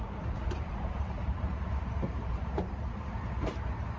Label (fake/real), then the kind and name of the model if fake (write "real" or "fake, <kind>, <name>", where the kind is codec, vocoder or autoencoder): fake, vocoder, BigVGAN v2